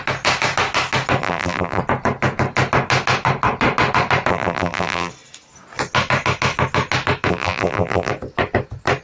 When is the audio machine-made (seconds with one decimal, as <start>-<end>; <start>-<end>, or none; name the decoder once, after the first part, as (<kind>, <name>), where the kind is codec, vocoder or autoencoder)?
1.2-1.8 (vocoder, BigVGAN v2); 4.3-5.1; 7.3-8.1